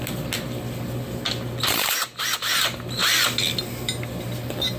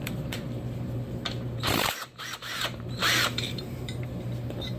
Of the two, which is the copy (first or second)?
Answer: second